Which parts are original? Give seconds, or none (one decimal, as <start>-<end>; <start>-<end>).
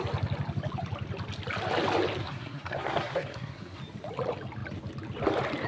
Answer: 0.0-2.2; 3.8-5.7